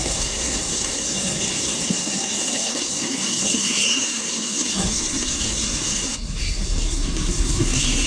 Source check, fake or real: fake